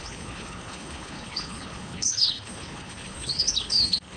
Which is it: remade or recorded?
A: remade